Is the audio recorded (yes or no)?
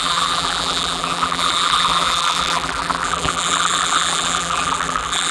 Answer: no